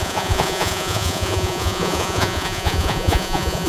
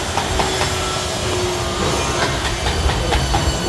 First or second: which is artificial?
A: first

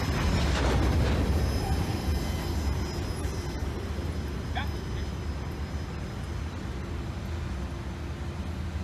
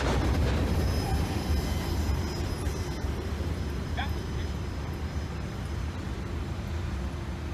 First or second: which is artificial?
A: second